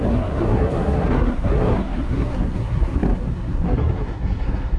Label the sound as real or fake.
fake